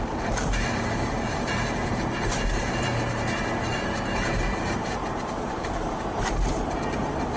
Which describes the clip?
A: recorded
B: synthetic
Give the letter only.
B